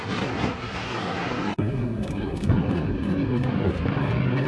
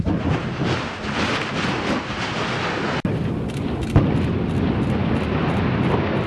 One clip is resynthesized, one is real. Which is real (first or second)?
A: second